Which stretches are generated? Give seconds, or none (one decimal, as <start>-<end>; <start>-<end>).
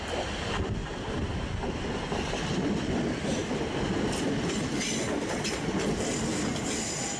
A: none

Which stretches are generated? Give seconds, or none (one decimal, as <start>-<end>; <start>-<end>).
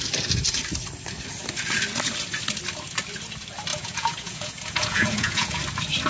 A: 3.7-5.6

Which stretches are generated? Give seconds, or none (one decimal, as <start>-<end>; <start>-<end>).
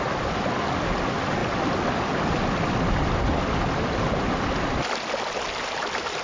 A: none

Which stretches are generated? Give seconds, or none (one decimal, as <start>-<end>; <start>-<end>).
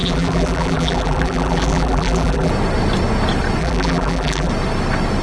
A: 0.0-2.5; 3.6-4.5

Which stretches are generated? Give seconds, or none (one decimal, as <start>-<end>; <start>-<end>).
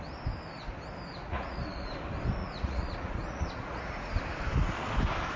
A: 1.2-1.9; 2.4-4.1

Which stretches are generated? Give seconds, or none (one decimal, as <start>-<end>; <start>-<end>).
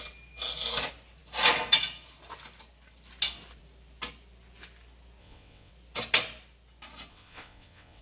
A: 5.2-5.7; 7.1-8.0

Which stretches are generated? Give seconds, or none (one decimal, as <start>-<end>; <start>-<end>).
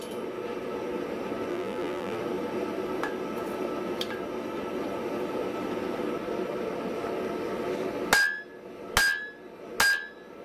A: 1.5-2.2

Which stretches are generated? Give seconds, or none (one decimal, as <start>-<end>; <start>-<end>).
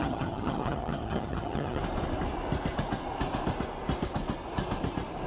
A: 0.0-1.8